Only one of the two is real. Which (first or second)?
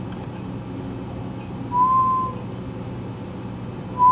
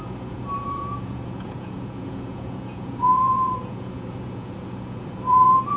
first